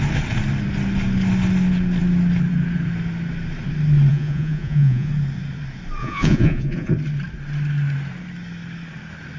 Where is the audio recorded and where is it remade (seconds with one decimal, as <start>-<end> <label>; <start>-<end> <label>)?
0.0-4.1 recorded; 4.1-5.1 remade; 5.1-6.0 recorded; 6.0-6.9 remade; 6.9-9.4 recorded

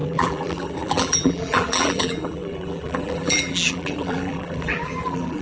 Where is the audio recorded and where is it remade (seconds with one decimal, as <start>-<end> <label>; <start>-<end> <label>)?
0.0-5.4 remade